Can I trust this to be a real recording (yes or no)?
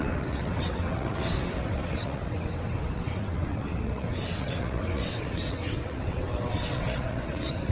no